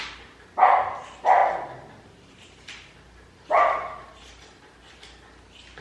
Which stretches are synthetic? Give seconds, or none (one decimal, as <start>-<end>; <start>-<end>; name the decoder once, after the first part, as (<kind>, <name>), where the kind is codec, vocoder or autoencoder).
1.4-4.9 (vocoder, BigVGAN v2)